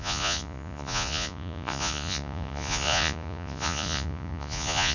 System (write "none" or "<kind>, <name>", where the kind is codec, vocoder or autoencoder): vocoder, Vocos